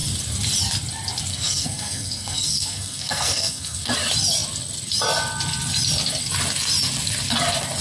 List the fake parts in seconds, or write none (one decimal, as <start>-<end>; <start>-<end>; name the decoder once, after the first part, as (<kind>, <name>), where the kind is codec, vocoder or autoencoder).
1.3-3.9 (codec, SNAC)